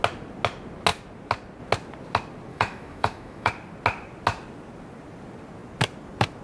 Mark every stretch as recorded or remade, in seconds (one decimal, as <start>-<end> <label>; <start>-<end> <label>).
0.0-2.5 recorded; 2.5-3.5 remade; 3.5-6.4 recorded